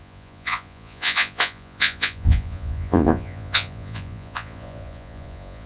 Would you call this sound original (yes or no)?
no